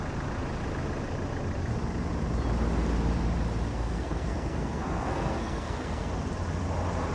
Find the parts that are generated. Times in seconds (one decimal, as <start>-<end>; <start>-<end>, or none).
3.7-6.1